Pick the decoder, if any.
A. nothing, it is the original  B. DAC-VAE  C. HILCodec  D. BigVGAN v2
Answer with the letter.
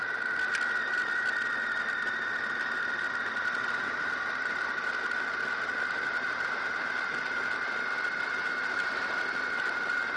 A